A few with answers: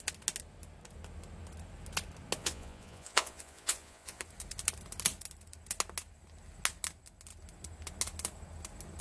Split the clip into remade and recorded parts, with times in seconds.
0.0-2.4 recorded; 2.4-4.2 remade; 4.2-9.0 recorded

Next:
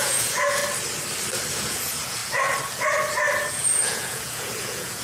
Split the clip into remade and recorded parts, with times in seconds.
0.0-0.6 remade; 0.6-1.6 recorded; 1.6-2.2 remade; 2.2-3.5 recorded; 3.5-5.0 remade

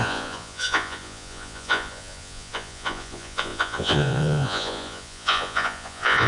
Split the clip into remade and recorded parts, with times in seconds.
0.0-6.3 remade

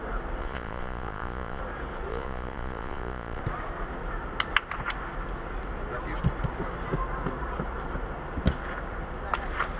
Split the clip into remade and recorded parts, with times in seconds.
0.0-0.4 recorded; 0.4-1.6 remade; 1.6-2.1 recorded; 2.1-3.4 remade; 3.4-9.8 recorded

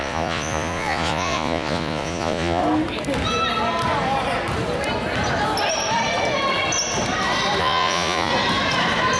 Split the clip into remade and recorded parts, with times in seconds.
0.0-2.6 remade; 2.6-7.6 recorded; 7.6-8.3 remade; 8.3-9.2 recorded

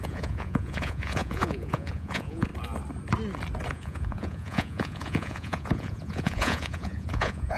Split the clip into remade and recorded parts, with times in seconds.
0.0-2.5 remade; 2.5-3.7 recorded; 3.7-7.6 remade

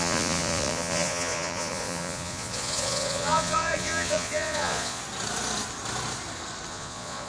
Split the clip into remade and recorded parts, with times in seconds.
0.0-5.0 remade; 5.0-6.7 recorded; 6.7-7.3 remade